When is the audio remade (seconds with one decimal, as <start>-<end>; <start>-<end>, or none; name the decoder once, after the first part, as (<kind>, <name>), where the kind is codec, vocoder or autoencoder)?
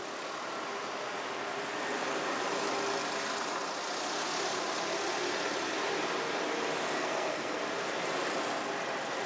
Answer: 7.0-7.6 (codec, SNAC)